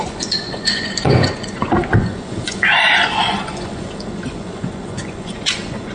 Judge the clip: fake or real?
fake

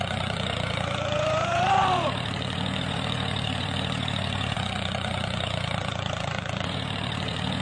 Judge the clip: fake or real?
fake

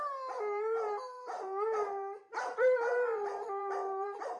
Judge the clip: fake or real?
fake